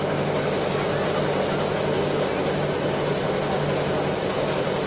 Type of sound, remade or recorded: recorded